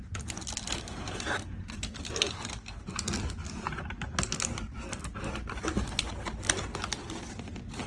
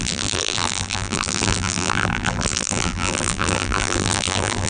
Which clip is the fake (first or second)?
second